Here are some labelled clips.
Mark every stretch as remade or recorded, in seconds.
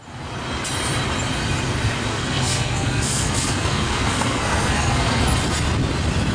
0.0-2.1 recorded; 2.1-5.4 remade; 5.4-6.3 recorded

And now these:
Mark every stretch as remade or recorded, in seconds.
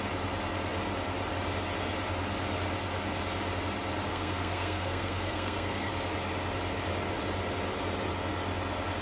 0.0-4.1 recorded; 4.1-5.9 remade; 5.9-9.0 recorded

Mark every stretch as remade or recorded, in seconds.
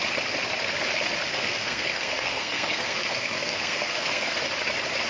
0.0-1.3 recorded; 1.3-4.4 remade; 4.4-5.1 recorded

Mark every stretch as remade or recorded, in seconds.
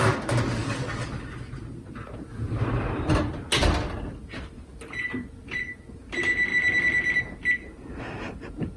0.0-8.8 recorded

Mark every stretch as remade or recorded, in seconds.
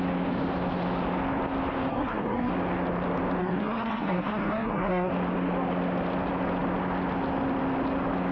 0.0-1.9 recorded; 1.9-2.5 remade; 2.5-3.4 recorded; 3.4-5.1 remade; 5.1-8.3 recorded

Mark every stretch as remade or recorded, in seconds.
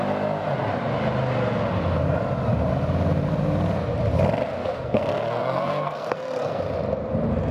0.0-4.6 recorded; 4.6-6.6 remade; 6.6-7.5 recorded